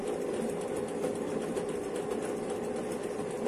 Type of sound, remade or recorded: remade